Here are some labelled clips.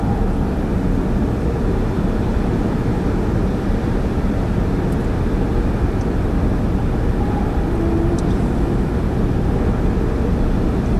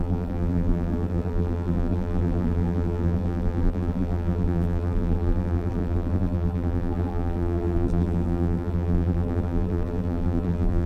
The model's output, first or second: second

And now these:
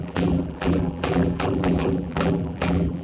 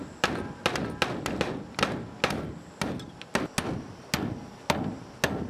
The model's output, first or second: first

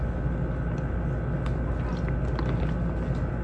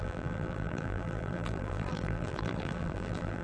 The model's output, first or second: second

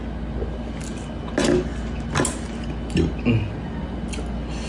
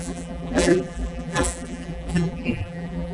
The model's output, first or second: second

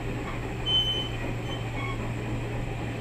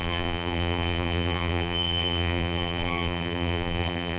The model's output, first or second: second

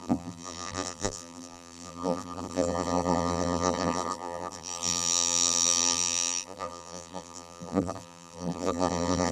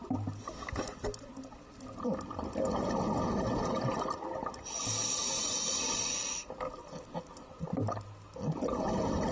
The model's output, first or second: first